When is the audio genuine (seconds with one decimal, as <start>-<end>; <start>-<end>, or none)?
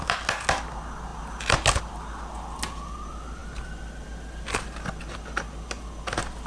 0.0-6.5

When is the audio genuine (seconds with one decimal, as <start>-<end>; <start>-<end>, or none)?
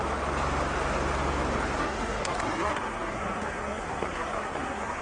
0.0-1.8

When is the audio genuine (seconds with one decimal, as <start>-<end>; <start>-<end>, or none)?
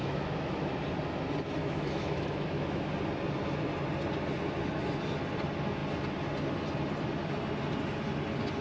0.7-1.6; 2.9-8.6